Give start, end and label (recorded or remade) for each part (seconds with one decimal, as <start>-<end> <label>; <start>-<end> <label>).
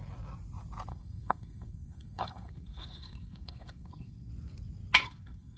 0.0-0.9 recorded; 0.9-4.3 remade; 4.3-5.0 recorded; 5.0-5.6 remade